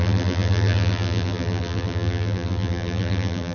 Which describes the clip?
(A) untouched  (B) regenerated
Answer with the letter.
B